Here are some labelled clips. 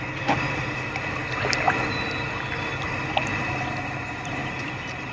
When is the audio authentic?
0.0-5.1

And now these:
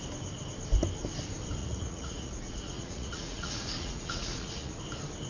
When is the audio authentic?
0.0-1.6; 4.8-5.3

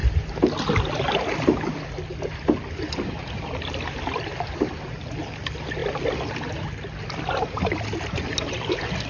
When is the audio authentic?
0.0-9.1